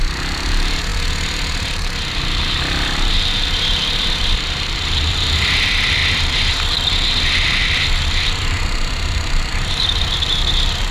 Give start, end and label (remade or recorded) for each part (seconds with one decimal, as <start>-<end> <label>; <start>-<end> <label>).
0.0-6.0 remade; 6.0-7.6 recorded; 7.6-9.5 remade; 9.5-10.9 recorded